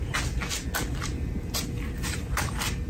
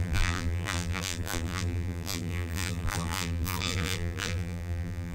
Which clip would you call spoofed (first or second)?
second